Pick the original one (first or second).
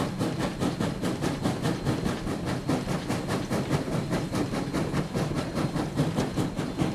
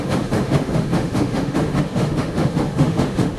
first